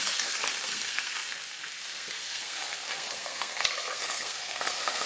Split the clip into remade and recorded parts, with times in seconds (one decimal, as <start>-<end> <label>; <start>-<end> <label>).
0.0-5.1 remade